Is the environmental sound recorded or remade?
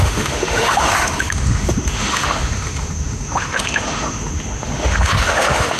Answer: remade